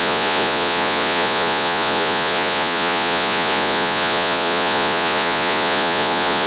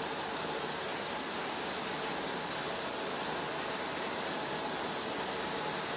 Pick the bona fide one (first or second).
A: second